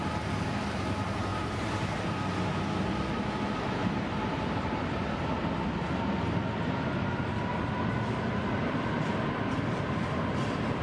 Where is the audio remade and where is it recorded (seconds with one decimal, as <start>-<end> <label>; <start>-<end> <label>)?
0.0-1.3 recorded; 1.3-1.9 remade; 1.9-3.8 recorded; 3.8-5.5 remade; 5.5-10.8 recorded